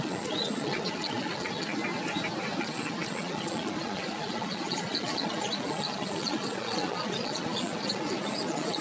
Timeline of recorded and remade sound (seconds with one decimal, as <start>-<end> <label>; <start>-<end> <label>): 0.0-1.8 remade; 1.8-2.6 recorded; 2.6-8.8 remade